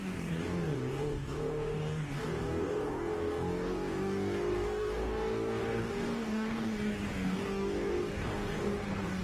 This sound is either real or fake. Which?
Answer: fake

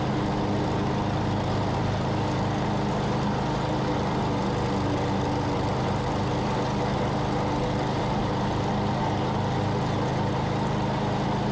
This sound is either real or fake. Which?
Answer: real